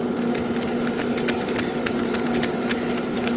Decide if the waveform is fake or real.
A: real